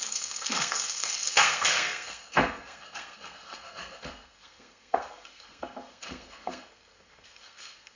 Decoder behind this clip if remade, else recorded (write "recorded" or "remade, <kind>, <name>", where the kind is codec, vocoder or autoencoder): remade, codec, SNAC